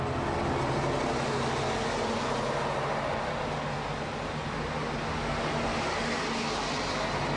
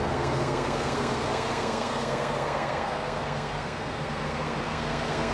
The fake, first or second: second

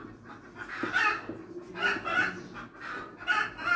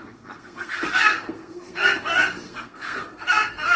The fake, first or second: second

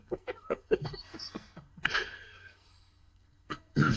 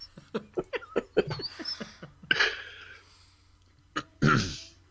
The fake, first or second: first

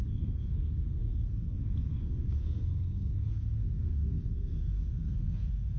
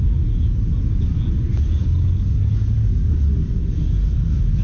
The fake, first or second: first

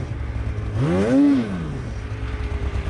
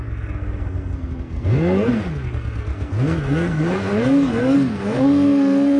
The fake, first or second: second